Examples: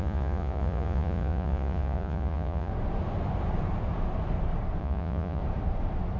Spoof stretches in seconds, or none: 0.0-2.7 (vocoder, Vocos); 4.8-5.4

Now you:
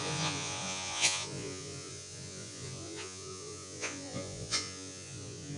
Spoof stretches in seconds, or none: 0.0-5.6 (vocoder, Vocos)

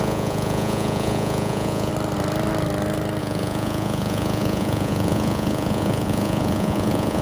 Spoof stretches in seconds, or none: 0.0-1.9 (vocoder, Vocos); 3.2-7.2

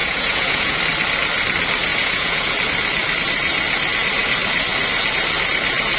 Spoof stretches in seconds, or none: 0.0-0.8 (vocoder, Vocos); 1.9-2.5

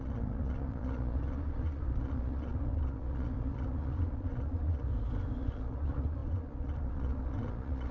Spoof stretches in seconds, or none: 0.0-4.9 (vocoder, Vocos); 5.4-7.9

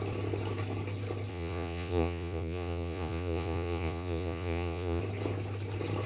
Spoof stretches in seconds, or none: 1.3-5.0 (vocoder, Vocos)

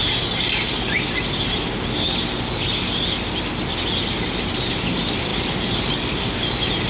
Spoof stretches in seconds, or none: none